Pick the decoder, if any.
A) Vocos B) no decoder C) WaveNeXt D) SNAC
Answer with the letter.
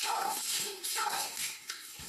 D